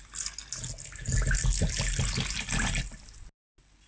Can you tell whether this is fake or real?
real